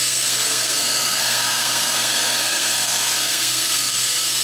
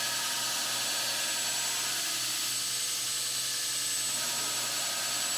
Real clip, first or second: second